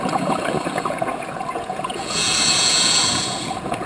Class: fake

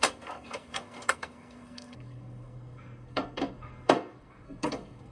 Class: fake